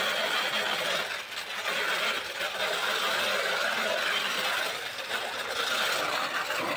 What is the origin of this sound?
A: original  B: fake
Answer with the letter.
A